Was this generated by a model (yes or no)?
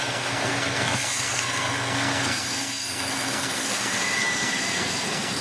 yes